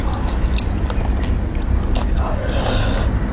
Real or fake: real